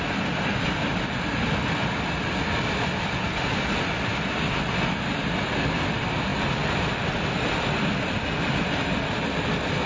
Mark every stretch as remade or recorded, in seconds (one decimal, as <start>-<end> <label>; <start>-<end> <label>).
0.0-9.9 recorded